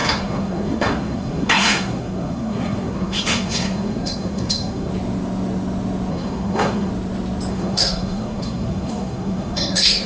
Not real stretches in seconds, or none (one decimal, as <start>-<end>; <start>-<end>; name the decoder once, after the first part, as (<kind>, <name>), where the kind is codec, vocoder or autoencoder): 0.0-4.9 (codec, SNAC); 6.1-6.9; 7.5-10.1